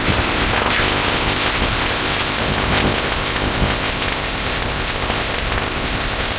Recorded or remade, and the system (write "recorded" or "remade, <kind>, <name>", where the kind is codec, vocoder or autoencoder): remade, codec, ZipCodec